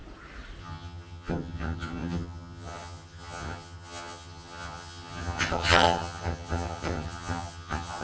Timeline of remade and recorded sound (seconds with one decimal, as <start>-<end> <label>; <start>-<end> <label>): 0.0-0.6 recorded; 0.6-8.0 remade

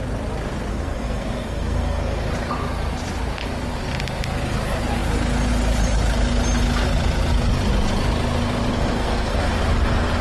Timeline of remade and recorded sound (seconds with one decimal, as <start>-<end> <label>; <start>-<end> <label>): 0.0-0.7 recorded; 0.7-2.2 remade; 2.2-8.7 recorded; 8.7-9.4 remade; 9.4-10.2 recorded

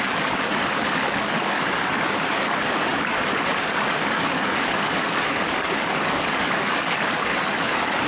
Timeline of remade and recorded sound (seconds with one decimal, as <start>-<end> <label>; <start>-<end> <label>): 0.0-8.1 remade